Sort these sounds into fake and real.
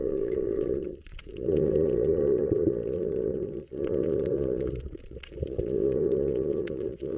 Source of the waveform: fake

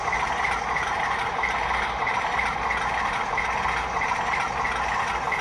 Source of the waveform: real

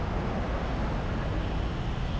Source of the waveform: real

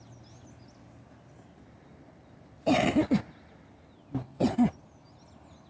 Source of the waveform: real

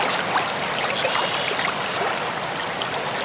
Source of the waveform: real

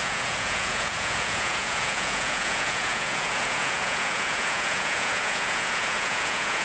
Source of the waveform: fake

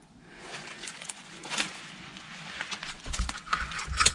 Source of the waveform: fake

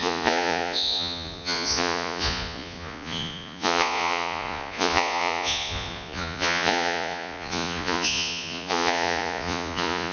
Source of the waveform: fake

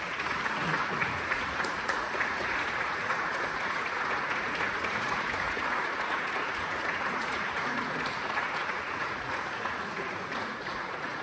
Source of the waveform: fake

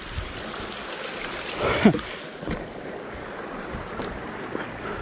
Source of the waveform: real